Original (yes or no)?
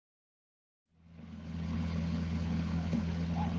no